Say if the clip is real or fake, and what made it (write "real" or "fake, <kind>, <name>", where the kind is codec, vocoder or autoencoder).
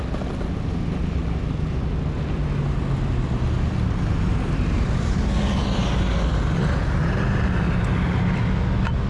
real